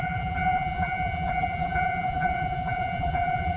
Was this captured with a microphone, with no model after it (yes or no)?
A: no